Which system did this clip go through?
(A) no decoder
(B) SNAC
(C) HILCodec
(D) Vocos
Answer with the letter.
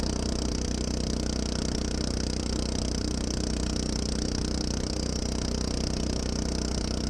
A